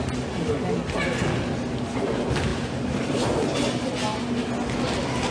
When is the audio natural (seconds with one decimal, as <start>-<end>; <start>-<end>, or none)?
0.0-2.5; 3.1-5.3